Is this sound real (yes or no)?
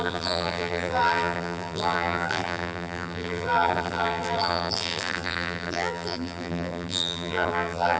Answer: no